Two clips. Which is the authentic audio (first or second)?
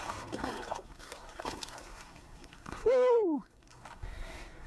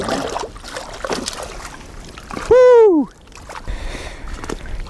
second